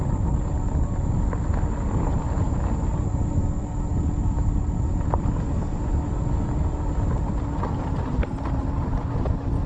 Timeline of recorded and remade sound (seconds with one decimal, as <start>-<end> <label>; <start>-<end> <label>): 0.0-9.7 recorded